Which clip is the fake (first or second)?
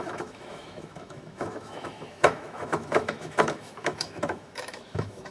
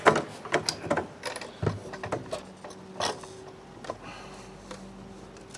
first